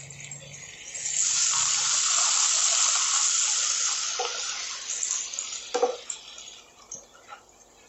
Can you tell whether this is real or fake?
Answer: real